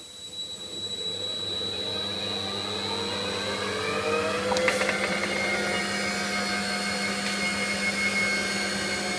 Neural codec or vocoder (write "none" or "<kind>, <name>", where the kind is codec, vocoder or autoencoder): none